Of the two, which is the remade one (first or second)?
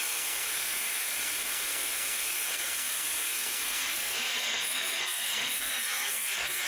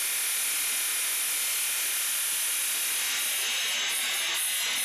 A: first